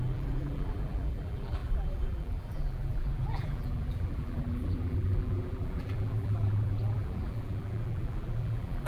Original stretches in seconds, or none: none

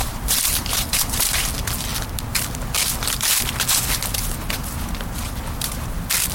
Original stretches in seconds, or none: 1.5-6.3

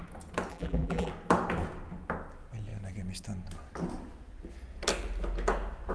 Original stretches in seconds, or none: 0.0-0.5; 1.1-5.9

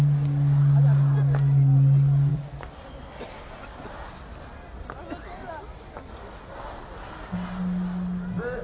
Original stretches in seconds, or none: 0.0-8.6

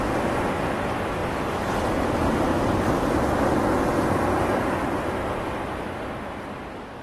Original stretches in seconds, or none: 0.0-7.0

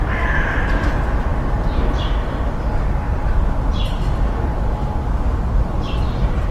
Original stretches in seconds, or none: 4.5-6.0

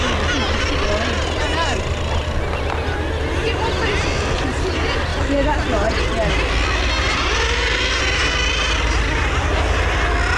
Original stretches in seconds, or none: 0.0-10.4

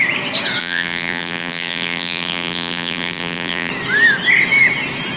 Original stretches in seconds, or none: 0.0-0.6; 3.7-5.2